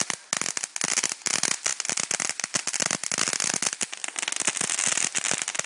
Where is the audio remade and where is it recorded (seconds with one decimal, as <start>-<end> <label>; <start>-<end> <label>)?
0.0-5.7 recorded